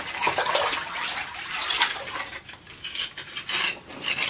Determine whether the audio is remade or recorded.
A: recorded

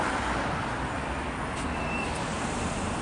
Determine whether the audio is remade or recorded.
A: recorded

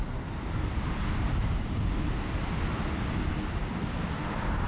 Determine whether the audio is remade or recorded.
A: recorded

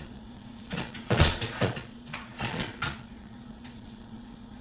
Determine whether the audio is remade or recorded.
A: remade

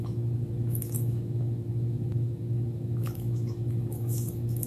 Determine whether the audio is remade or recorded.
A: remade